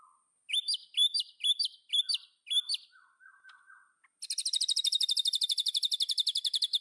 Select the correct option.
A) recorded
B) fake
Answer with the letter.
A